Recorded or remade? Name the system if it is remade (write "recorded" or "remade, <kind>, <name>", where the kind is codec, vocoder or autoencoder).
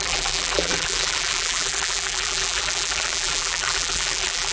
remade, vocoder, BigVGAN v2